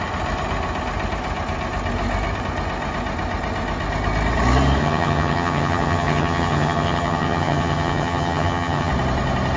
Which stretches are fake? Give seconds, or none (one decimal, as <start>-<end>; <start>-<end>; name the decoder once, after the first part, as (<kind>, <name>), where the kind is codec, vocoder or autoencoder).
4.8-8.9 (vocoder, HiFi-GAN)